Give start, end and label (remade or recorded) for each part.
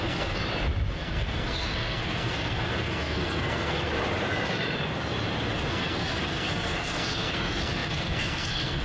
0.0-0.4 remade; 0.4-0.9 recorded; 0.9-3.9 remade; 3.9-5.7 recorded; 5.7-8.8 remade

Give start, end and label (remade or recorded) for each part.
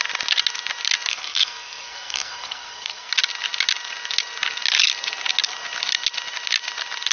0.0-1.1 recorded; 1.1-3.1 remade; 3.1-7.1 recorded